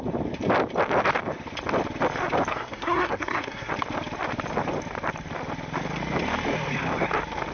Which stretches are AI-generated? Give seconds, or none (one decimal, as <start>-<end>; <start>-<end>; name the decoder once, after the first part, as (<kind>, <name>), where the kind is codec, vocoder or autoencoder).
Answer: 2.5-3.7 (codec, SNAC)